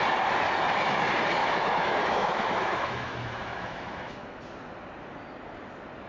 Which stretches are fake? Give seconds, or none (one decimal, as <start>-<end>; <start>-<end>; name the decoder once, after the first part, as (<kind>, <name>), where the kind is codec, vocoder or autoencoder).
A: 1.4-4.4 (autoencoder, DAC-VAE)